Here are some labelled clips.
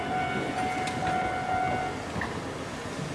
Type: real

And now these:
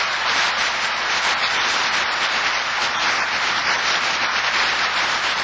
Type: fake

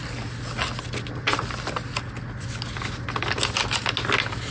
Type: real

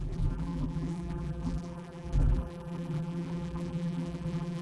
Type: fake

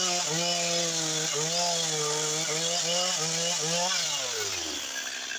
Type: real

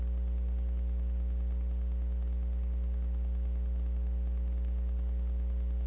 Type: real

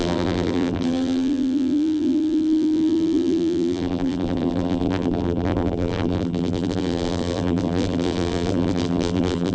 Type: fake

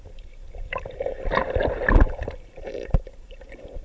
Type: fake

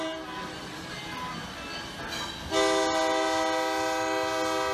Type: real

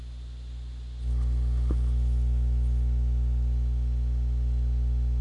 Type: real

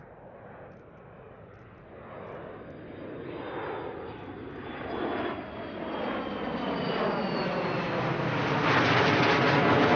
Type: real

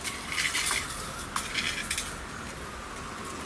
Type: real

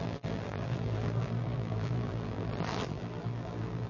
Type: fake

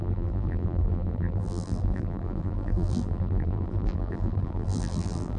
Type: fake